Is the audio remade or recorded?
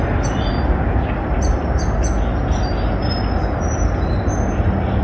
recorded